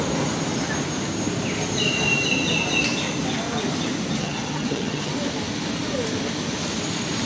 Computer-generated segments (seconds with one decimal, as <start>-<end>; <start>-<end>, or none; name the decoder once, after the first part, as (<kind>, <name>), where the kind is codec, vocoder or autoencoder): 4.2-5.1 (vocoder, HiFi-GAN)